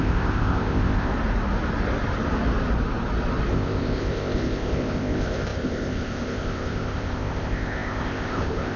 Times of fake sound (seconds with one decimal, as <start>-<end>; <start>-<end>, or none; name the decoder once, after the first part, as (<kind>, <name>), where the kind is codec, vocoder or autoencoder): 0.0-1.1 (codec, ZipCodec); 3.5-8.8